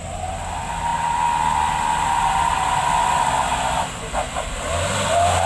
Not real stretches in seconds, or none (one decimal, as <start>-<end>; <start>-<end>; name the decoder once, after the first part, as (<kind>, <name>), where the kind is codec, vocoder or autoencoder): none